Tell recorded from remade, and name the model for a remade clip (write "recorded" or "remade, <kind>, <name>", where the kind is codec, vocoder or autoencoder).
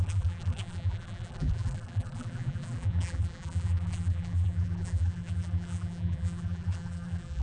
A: remade, vocoder, BigVGAN v2